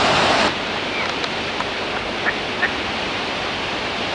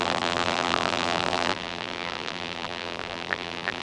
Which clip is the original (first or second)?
first